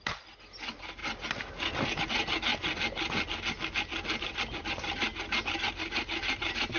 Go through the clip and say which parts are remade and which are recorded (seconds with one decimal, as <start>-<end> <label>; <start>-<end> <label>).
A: 0.0-6.8 recorded